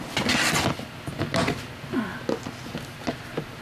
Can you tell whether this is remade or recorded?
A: recorded